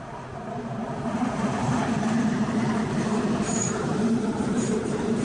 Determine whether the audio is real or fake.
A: fake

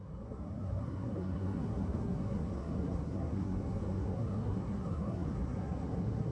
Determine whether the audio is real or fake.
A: fake